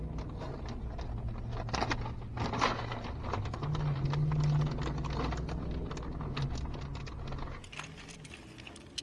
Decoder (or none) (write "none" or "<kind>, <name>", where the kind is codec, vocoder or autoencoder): none